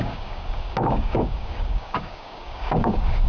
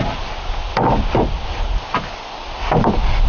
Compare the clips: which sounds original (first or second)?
second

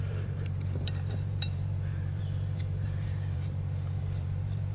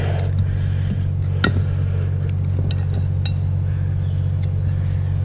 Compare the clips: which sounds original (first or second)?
second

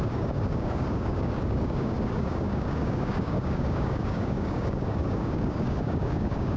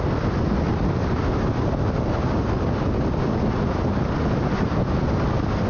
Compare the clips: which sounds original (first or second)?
second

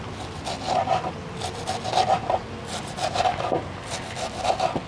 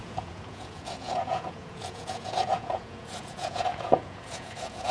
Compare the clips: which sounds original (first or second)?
first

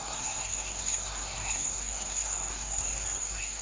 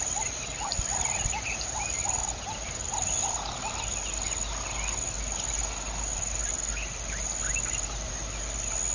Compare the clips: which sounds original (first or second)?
second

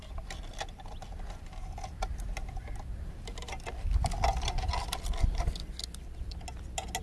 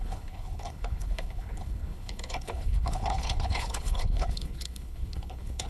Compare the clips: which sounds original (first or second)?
first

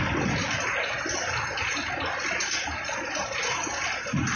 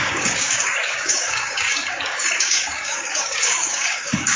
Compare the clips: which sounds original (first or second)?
first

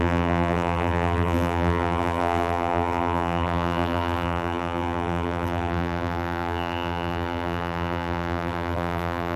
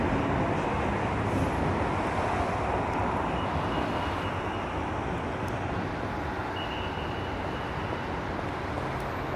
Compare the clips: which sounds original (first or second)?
second